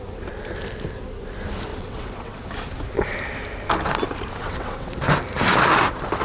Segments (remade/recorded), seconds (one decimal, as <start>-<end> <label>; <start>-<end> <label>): 0.0-1.7 recorded; 1.7-2.5 remade; 2.5-4.4 recorded; 4.4-5.0 remade; 5.0-6.2 recorded